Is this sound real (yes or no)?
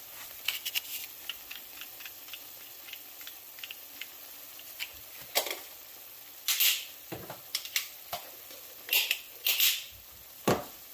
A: yes